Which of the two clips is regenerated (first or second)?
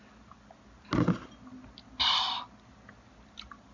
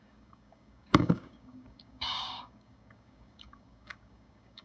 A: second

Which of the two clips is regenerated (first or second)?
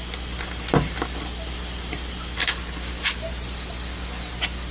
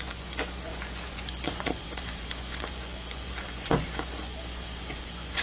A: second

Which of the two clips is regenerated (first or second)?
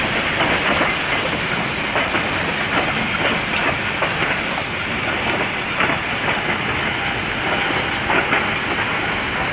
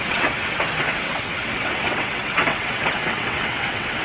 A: second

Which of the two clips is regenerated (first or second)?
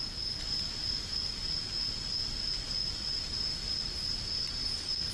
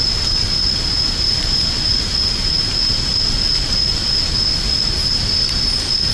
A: second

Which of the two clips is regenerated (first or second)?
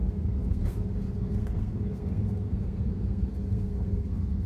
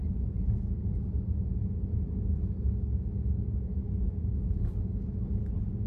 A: first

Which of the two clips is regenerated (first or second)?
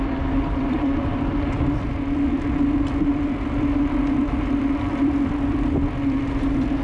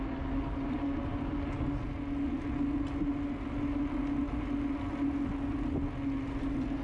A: first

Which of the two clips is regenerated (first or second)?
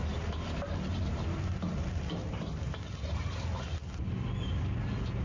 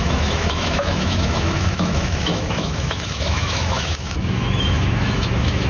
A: second